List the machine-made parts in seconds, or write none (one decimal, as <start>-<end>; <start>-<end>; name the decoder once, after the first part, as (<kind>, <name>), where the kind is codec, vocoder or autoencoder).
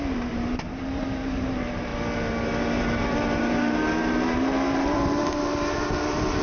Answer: 0.0-1.9 (vocoder, BigVGAN v2); 2.8-6.4